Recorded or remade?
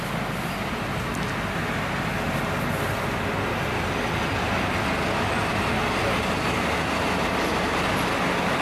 recorded